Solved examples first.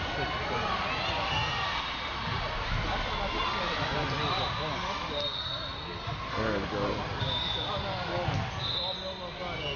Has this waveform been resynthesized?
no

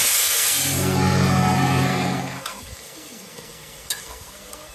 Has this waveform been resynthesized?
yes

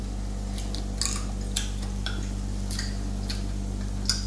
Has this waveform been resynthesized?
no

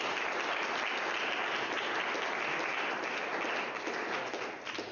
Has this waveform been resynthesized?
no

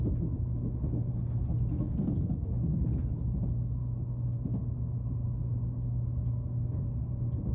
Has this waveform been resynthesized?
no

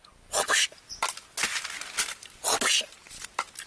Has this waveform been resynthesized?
no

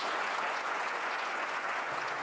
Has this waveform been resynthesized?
yes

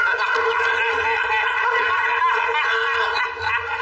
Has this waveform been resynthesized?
no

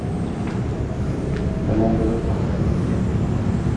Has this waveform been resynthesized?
no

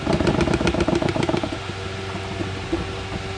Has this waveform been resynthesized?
no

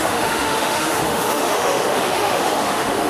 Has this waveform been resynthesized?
yes